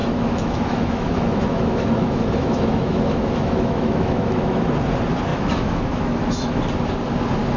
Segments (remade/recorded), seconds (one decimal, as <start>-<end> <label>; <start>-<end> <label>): 0.0-4.6 remade; 4.6-5.3 recorded; 5.3-6.6 remade; 6.6-7.6 recorded